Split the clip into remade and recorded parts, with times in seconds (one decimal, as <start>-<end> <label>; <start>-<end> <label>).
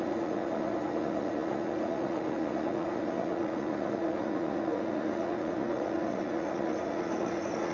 0.0-7.7 remade